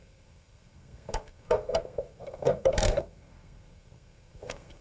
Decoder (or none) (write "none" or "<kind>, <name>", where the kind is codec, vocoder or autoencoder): codec, SNAC